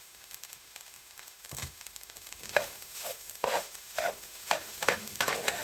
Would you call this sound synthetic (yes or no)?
yes